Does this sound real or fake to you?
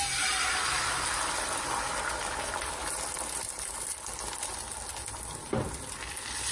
real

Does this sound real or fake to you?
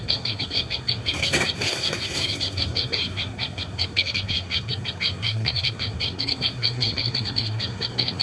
fake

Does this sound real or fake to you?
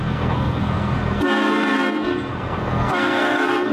fake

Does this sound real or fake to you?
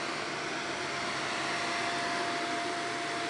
real